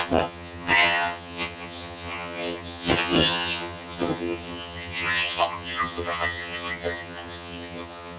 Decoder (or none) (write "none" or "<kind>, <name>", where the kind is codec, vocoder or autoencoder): vocoder, HiFi-GAN